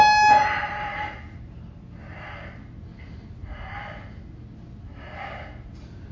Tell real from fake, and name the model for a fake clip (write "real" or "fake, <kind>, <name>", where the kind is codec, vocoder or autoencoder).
real